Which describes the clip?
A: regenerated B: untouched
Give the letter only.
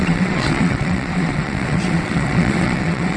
A